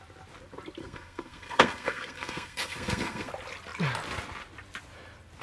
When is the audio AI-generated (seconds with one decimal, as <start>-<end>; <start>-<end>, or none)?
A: 0.8-3.3